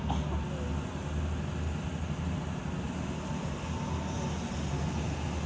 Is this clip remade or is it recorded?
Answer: recorded